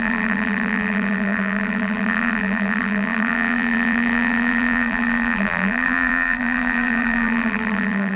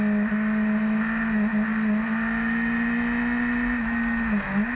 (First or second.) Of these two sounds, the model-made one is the first